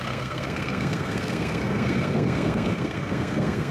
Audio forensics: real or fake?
fake